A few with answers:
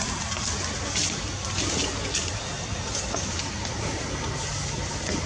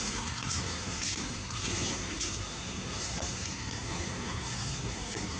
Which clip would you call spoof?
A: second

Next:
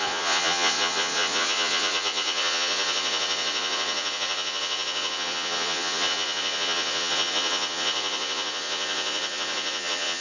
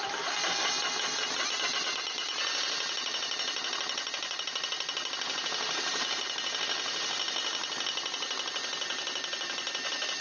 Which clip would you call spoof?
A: first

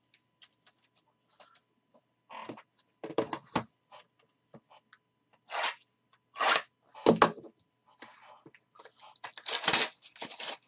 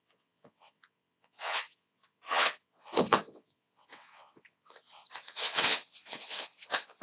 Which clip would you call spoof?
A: second